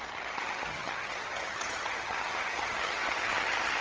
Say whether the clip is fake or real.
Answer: fake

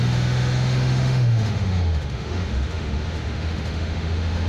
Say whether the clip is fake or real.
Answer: fake